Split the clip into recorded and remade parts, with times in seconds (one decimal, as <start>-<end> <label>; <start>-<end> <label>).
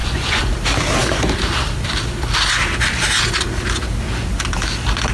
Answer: 0.0-0.5 remade; 0.5-5.1 recorded